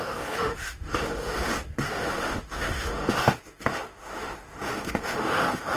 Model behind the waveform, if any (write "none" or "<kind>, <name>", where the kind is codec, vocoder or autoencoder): autoencoder, DAC-VAE